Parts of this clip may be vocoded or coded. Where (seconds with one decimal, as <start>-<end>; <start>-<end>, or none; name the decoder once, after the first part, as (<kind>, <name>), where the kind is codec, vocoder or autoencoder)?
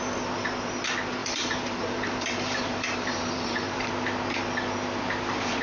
1.2-3.9 (vocoder, BigVGAN v2)